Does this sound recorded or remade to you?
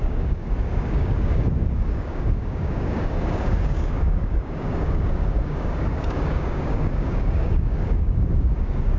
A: remade